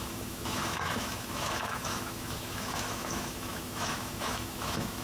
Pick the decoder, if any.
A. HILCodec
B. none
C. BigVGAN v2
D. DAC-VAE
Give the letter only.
D